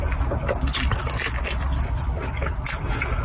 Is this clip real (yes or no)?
yes